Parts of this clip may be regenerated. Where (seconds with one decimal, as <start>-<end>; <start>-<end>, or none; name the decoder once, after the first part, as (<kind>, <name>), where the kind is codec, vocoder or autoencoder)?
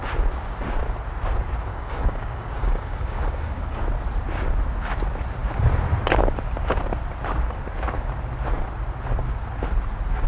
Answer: 1.7-3.8 (codec, DAC)